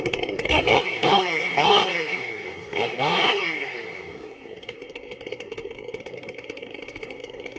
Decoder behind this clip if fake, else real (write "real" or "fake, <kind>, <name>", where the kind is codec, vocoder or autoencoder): fake, codec, SNAC